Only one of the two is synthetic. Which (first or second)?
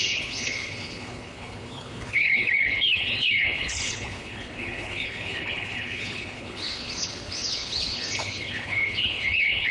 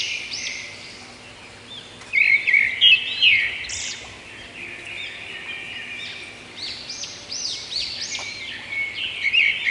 first